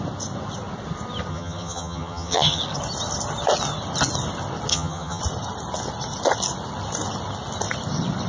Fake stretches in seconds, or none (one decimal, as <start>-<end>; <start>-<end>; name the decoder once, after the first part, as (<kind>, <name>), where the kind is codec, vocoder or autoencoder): 1.3-2.6 (vocoder, HiFi-GAN); 4.7-5.2